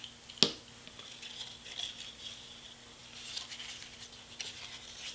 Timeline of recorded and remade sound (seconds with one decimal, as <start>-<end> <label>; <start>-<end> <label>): 0.0-5.1 recorded